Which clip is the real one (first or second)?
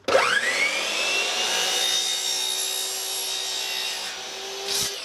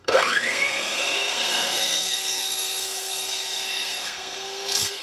first